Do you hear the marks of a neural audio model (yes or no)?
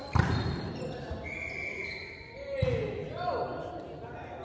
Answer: no